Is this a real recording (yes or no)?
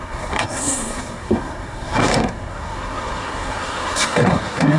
no